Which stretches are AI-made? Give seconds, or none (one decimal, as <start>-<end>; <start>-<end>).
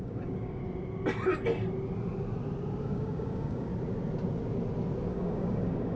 0.0-0.6; 2.8-3.7; 5.1-6.0